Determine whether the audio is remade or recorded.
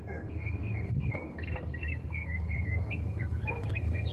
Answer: remade